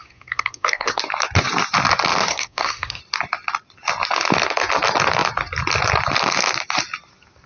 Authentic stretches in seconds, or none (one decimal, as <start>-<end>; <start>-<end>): 1.0-2.3; 3.0-7.5